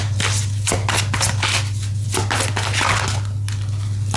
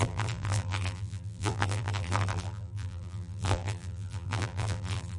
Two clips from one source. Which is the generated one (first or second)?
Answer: second